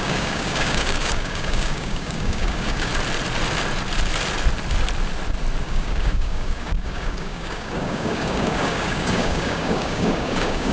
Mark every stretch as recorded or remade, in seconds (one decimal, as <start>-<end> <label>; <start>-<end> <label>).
0.0-2.9 remade; 2.9-5.6 recorded; 5.6-10.7 remade